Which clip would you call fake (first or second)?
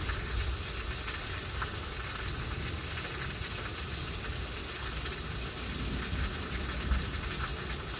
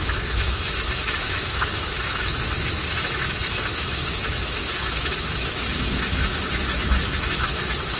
second